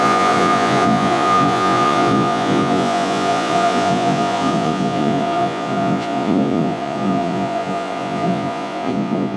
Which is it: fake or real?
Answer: fake